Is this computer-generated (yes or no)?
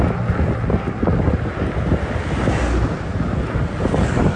no